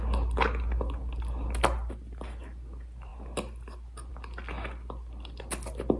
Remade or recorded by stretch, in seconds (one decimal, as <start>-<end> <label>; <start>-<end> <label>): 0.0-6.0 recorded